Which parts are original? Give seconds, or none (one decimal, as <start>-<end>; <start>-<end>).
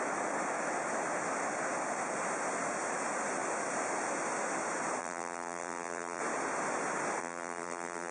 0.0-5.0; 6.2-7.2